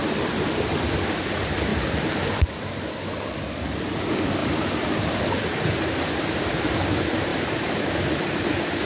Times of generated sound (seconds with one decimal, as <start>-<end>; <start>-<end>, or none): 1.7-2.8; 4.4-5.3; 7.3-7.8